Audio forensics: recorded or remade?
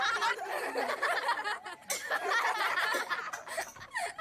recorded